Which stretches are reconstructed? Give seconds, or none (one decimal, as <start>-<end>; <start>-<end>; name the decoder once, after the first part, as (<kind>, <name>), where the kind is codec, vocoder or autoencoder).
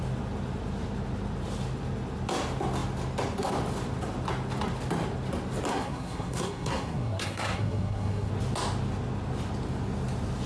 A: 5.7-8.3 (codec, SNAC)